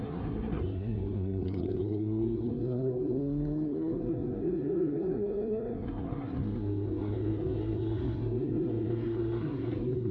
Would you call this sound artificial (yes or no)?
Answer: yes